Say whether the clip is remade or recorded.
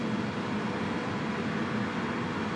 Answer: recorded